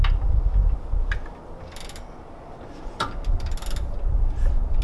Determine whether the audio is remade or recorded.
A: recorded